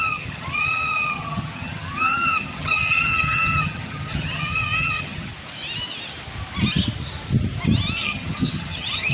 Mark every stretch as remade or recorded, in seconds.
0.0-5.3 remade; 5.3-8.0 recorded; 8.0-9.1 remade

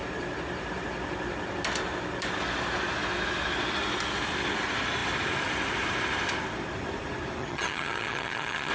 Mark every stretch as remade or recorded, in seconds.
0.0-7.4 recorded; 7.4-8.7 remade

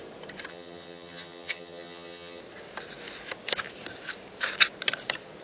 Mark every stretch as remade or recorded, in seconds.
0.0-0.5 recorded; 0.5-2.4 remade; 2.4-5.4 recorded

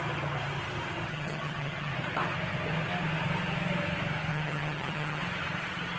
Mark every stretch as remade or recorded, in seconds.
0.0-1.1 recorded; 1.1-1.9 remade; 1.9-4.3 recorded; 4.3-5.2 remade; 5.2-6.0 recorded

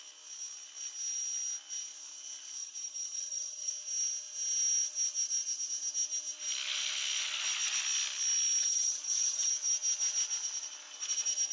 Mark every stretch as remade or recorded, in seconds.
0.0-2.6 recorded; 2.6-3.7 remade; 3.7-8.6 recorded; 8.6-9.5 remade; 9.5-11.5 recorded

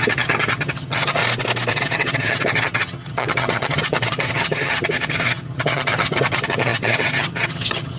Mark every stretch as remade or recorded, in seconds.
0.0-1.2 remade; 1.2-1.7 recorded; 1.7-8.0 remade

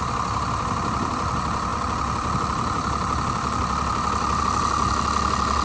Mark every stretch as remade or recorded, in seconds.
0.0-5.6 recorded

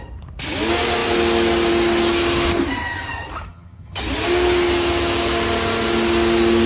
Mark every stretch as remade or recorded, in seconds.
0.0-3.5 recorded; 3.5-4.0 remade; 4.0-6.7 recorded